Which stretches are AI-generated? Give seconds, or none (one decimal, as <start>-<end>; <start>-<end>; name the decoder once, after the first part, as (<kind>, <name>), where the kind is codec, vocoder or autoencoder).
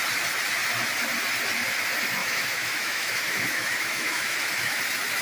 2.2-4.8 (autoencoder, DAC-VAE)